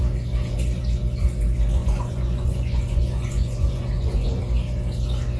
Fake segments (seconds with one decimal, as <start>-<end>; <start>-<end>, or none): 1.8-4.4